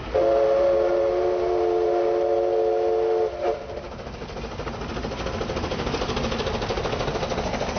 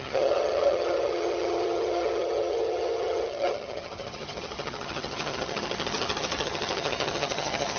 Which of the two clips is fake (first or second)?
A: second